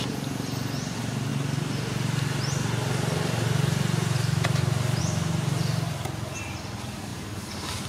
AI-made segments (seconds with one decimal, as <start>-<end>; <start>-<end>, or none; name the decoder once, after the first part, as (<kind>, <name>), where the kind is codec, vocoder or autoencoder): 7.1-7.9 (vocoder, BigVGAN v2)